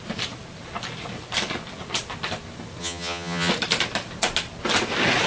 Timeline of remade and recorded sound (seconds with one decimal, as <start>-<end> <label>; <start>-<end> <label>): 0.0-2.8 recorded; 2.8-3.5 remade; 3.5-5.3 recorded